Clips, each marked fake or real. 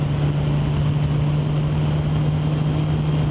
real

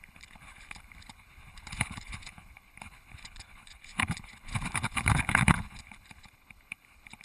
fake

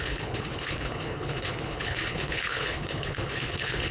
fake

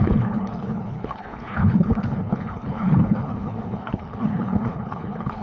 fake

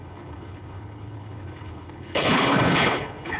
fake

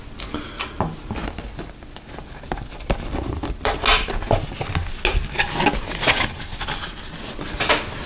real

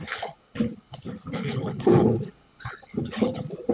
fake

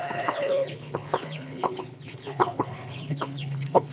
fake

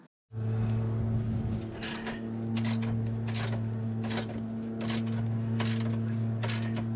real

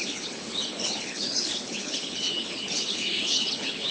fake